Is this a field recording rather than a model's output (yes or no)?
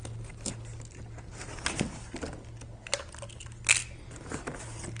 yes